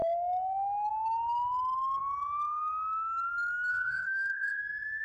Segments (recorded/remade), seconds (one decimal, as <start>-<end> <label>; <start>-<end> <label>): 0.0-3.7 recorded; 3.7-4.6 remade; 4.6-5.0 recorded